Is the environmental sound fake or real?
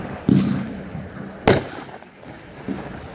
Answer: real